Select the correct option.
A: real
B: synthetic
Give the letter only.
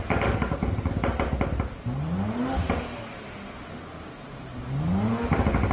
A